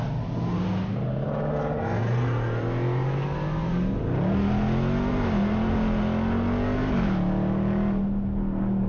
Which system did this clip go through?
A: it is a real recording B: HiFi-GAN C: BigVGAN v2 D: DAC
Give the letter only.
A